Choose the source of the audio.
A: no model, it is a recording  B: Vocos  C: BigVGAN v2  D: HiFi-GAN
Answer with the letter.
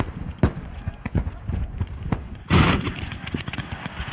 B